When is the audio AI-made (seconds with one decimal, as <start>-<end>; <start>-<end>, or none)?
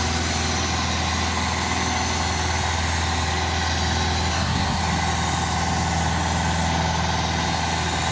4.3-4.8